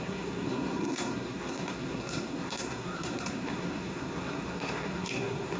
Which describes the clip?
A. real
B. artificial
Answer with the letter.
B